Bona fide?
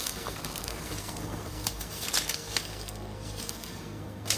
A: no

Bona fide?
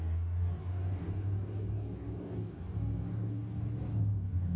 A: no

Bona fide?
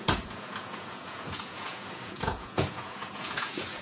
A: no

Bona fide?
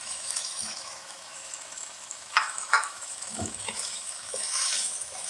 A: no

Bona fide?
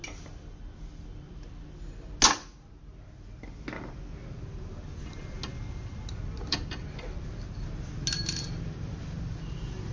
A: yes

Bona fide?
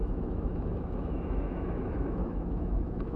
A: no